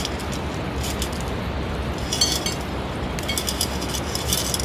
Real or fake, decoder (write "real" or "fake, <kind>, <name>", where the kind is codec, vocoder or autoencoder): real